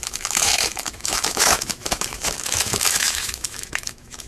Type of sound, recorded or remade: remade